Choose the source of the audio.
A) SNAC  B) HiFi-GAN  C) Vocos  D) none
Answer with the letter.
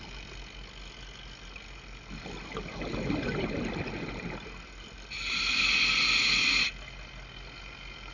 D